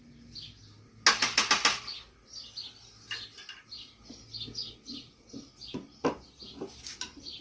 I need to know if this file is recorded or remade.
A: recorded